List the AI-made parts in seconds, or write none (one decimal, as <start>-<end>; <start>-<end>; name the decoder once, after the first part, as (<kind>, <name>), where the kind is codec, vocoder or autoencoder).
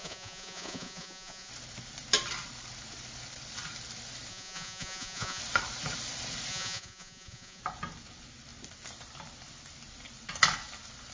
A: 0.0-1.5 (vocoder, Vocos); 4.3-5.4; 6.5-7.6